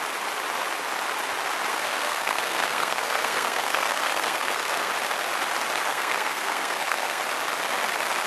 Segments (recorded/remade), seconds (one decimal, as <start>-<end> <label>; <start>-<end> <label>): 0.0-1.7 recorded; 1.7-4.9 remade; 4.9-5.9 recorded; 5.9-7.2 remade; 7.2-8.3 recorded